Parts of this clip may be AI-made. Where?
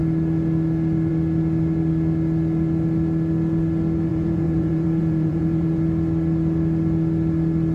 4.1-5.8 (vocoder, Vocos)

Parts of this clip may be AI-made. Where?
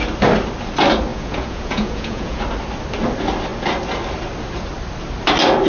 1.1-2.4 (vocoder, Vocos)